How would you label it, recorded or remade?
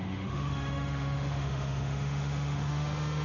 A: remade